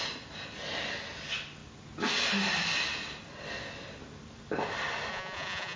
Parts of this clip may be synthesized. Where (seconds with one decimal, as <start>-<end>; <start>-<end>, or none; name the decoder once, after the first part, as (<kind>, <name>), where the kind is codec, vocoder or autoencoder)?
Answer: 5.1-5.8 (vocoder, Vocos)